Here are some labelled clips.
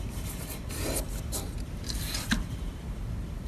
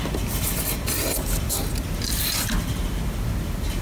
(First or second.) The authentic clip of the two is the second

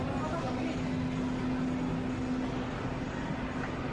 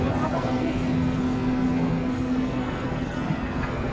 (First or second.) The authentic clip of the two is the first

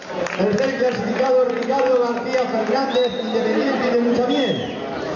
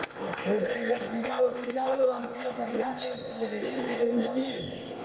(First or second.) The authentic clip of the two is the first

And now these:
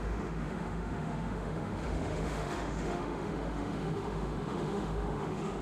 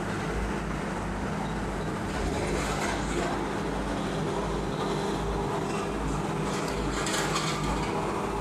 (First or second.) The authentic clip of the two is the second